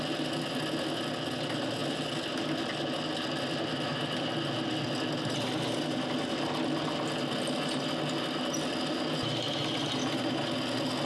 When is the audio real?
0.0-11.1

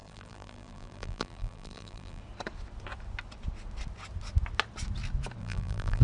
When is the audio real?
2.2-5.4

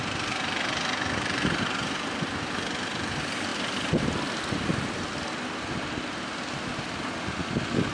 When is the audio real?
0.0-7.9

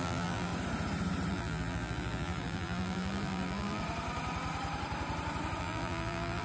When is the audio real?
0.5-1.3; 3.8-5.6